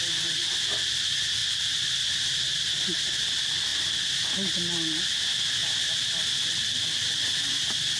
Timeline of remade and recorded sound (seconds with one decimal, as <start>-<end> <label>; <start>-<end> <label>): 0.0-1.4 recorded; 1.4-2.7 remade; 2.7-5.6 recorded; 5.6-6.3 remade; 6.3-8.0 recorded